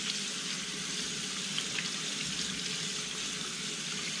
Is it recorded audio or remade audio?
recorded